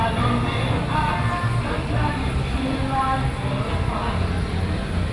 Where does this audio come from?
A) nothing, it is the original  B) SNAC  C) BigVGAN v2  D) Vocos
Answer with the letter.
A